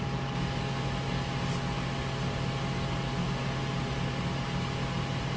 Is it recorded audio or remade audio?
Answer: recorded